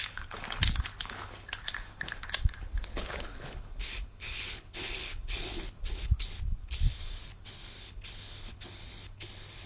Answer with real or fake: fake